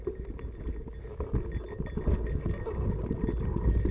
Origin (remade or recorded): recorded